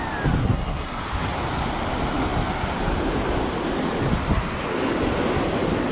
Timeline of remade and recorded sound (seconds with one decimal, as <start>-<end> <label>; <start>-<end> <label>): 0.0-0.4 recorded; 0.4-1.0 remade; 1.0-5.9 recorded